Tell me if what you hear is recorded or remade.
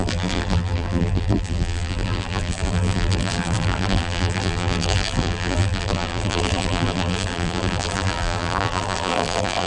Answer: remade